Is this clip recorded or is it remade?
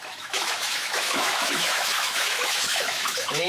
remade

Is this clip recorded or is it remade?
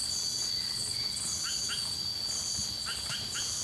recorded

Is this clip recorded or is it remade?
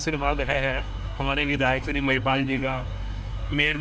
remade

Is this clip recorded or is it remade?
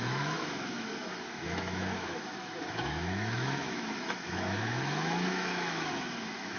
remade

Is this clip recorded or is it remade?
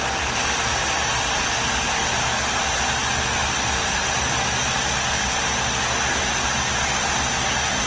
recorded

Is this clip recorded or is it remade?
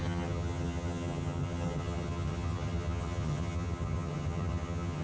remade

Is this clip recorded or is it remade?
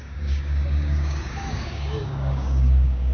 remade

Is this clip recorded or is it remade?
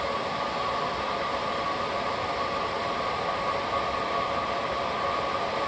recorded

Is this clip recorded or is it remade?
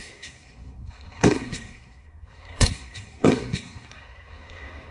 remade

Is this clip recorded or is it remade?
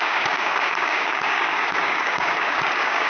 remade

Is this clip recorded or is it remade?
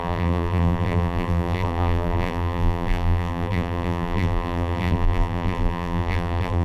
remade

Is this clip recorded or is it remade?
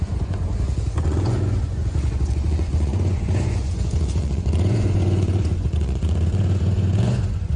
remade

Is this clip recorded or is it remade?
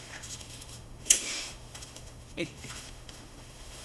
remade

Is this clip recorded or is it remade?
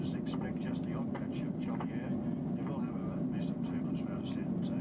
recorded